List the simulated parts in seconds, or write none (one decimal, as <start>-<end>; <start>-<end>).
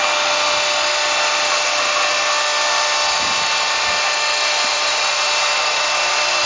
4.7-6.5